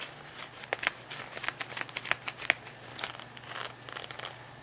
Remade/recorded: recorded